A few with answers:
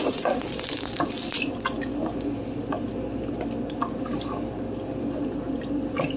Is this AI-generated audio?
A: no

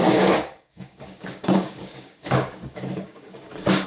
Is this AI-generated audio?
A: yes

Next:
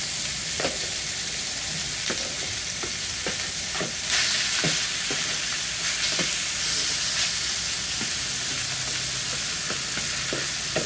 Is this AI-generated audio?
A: no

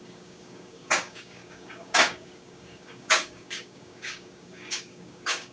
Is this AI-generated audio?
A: yes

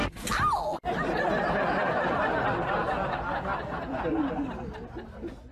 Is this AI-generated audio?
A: no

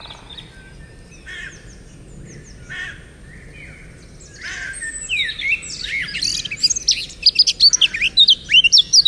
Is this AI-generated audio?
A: no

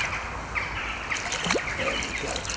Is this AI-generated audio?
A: no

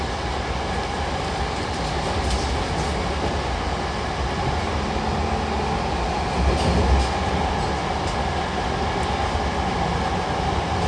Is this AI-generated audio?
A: no